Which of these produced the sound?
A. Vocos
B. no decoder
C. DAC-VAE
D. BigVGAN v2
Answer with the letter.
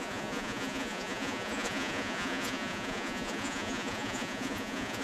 A